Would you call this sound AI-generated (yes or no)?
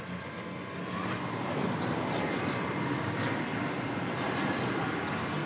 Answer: no